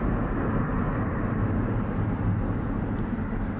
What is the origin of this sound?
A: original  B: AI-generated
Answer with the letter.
A